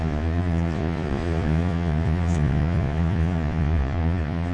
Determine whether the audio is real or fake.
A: fake